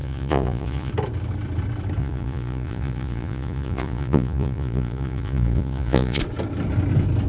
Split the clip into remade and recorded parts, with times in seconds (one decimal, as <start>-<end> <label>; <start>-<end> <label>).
0.0-0.9 remade; 0.9-2.0 recorded; 2.0-6.2 remade; 6.2-7.3 recorded